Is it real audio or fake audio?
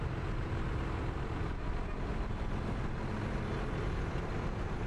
real